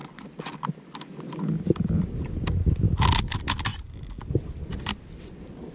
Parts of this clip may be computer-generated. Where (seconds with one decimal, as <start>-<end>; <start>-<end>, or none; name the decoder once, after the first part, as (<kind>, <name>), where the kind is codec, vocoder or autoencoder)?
none